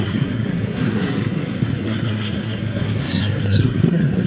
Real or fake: fake